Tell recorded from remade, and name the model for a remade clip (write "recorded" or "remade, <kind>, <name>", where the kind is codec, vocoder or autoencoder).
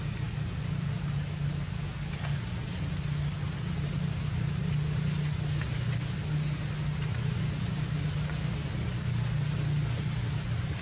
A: recorded